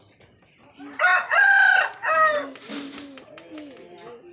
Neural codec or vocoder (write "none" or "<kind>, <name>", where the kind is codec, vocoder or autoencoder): none